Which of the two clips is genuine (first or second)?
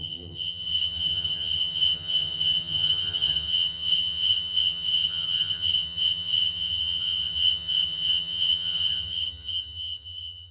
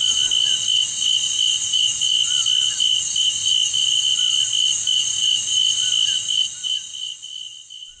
second